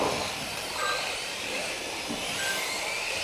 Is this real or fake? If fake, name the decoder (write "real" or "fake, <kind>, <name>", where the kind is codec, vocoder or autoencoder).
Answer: fake, vocoder, BigVGAN v2